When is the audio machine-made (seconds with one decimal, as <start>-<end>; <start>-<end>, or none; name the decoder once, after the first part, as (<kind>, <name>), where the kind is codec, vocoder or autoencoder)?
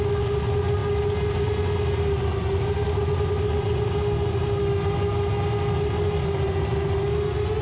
none